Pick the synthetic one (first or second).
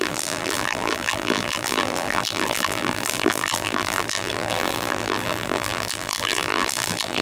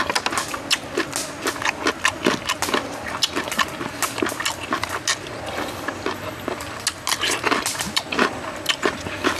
first